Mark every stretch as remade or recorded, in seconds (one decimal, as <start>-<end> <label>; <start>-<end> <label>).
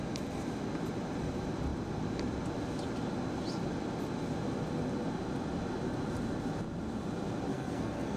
0.0-7.5 recorded; 7.5-8.2 remade